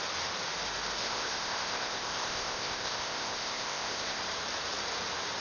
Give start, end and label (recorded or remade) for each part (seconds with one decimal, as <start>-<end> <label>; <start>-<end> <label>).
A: 0.0-1.0 recorded; 1.0-4.2 remade; 4.2-5.4 recorded